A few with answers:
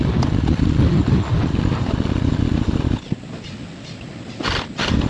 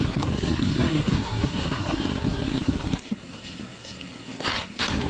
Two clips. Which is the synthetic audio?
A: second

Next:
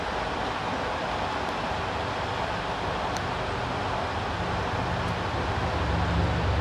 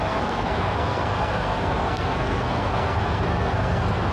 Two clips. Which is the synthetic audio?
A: second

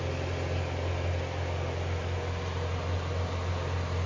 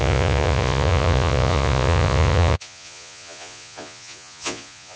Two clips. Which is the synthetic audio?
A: second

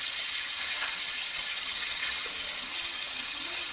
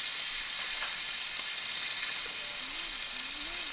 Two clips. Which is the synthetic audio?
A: first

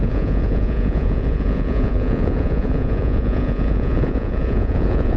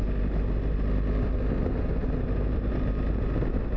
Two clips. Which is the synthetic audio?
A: first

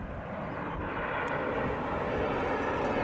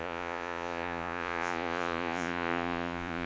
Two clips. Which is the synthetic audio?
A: second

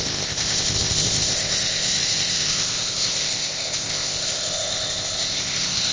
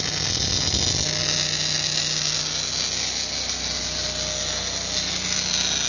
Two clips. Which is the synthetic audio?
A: first